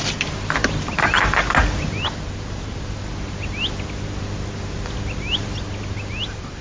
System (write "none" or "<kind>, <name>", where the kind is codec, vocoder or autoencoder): none